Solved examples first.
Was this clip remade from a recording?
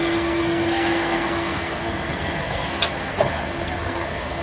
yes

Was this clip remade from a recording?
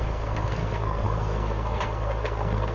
yes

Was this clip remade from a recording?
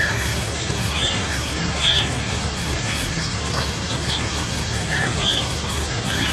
yes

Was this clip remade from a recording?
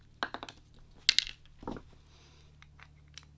no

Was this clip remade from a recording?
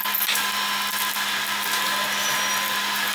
no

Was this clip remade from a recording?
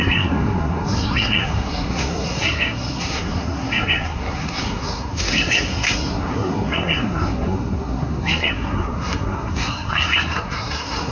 yes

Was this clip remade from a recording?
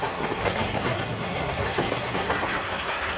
yes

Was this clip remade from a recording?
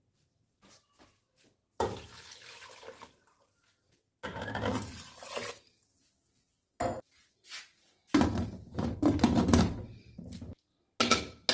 no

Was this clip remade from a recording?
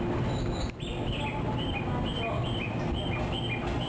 no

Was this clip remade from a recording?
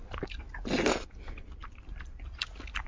no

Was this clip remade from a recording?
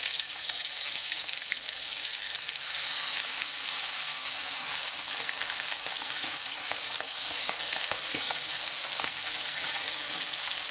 yes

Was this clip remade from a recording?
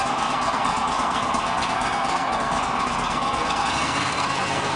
yes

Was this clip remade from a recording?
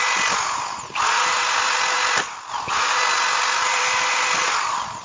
no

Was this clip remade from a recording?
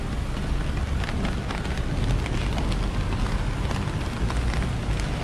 no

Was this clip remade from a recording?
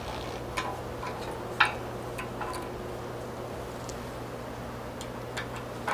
no